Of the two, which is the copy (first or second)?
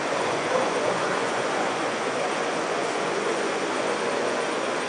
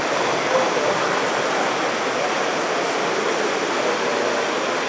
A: first